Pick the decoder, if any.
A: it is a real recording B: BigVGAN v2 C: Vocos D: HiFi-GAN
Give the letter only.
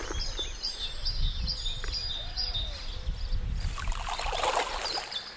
A